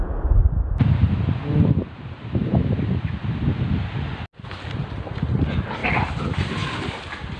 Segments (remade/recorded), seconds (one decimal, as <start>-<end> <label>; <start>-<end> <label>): 0.0-0.4 recorded; 0.4-3.1 remade; 3.1-7.4 recorded